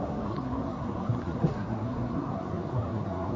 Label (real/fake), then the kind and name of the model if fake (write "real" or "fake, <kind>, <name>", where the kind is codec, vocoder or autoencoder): fake, codec, SNAC